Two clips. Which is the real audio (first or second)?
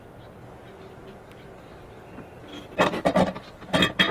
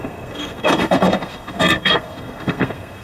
first